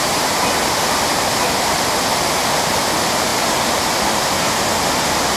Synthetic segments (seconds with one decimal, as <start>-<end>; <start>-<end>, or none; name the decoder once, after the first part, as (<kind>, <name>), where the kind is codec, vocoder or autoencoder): none